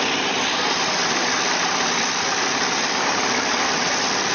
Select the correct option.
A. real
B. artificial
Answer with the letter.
B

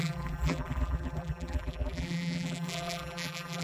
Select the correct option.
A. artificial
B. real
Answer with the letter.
A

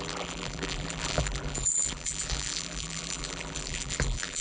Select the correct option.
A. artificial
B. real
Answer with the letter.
A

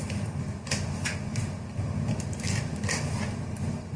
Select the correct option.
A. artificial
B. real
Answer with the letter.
B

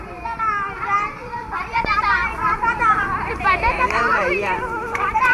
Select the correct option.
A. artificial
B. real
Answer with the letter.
A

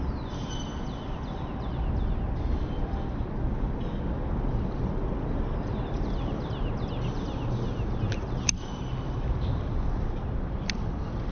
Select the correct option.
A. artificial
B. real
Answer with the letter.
B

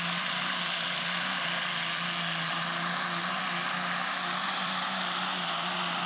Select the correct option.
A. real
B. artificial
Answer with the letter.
B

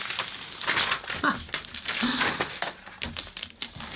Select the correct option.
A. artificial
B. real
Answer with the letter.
B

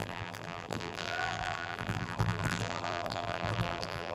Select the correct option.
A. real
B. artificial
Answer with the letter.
B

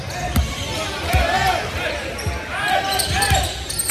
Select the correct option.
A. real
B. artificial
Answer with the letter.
A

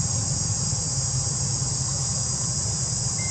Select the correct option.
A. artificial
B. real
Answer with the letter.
B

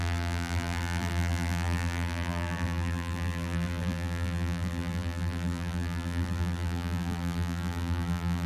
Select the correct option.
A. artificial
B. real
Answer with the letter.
A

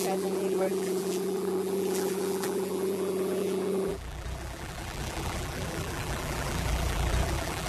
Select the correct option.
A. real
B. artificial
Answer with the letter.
B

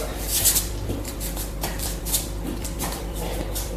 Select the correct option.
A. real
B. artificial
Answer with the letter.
B